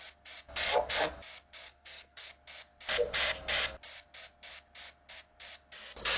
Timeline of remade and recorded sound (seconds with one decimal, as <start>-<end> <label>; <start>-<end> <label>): 0.0-1.7 recorded; 1.7-2.3 remade; 2.3-6.2 recorded